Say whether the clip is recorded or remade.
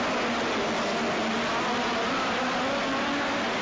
recorded